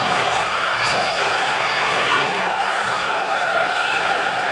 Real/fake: fake